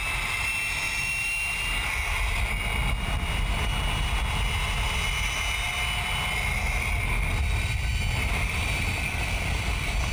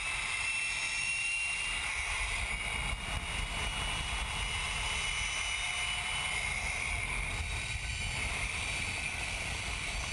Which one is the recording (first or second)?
first